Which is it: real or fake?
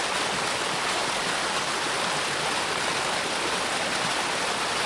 real